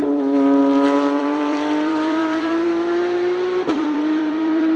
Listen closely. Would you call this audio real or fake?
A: fake